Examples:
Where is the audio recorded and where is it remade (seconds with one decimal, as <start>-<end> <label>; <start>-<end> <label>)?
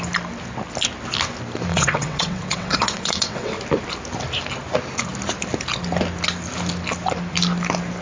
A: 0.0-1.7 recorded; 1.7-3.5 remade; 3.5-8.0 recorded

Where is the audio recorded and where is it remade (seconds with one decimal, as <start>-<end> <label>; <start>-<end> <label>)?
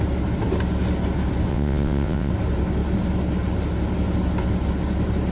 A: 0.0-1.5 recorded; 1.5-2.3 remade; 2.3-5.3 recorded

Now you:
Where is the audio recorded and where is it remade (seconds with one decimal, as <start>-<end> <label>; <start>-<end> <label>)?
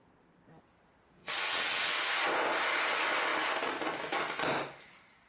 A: 0.0-1.2 recorded; 1.2-2.0 remade; 2.0-5.3 recorded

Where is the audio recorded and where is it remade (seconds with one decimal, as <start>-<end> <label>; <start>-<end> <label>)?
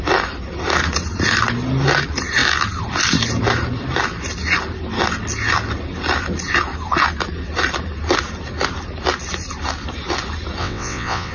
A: 0.0-10.6 recorded; 10.6-11.3 remade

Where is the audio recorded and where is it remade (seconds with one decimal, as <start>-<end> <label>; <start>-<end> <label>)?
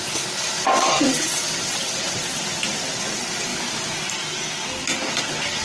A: 0.0-0.8 recorded; 0.8-2.4 remade; 2.4-5.6 recorded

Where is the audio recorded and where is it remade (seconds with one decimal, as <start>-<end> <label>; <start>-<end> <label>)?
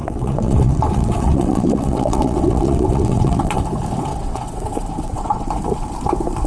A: 0.0-3.6 remade; 3.6-4.1 recorded; 4.1-5.5 remade; 5.5-6.5 recorded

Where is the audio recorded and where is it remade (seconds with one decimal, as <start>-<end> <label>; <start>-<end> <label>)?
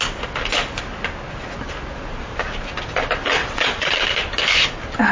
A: 0.0-3.4 recorded; 3.4-3.9 remade; 3.9-5.1 recorded